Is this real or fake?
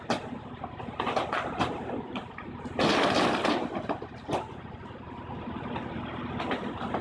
real